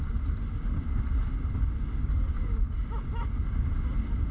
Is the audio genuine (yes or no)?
yes